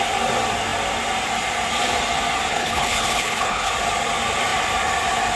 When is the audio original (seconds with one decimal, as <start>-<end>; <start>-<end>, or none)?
0.0-2.5; 3.7-5.4